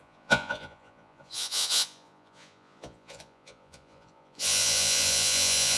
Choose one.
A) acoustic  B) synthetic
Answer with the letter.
B